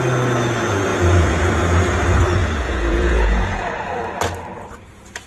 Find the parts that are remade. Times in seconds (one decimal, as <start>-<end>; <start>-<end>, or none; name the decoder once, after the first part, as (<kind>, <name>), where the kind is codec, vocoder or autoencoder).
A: 0.9-1.5 (vocoder, Vocos); 2.4-3.7